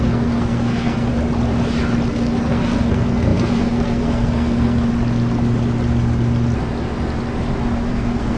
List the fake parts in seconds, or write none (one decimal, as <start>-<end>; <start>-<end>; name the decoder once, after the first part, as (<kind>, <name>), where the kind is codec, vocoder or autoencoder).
0.0-1.1 (codec, SNAC); 2.1-4.9; 7.9-8.4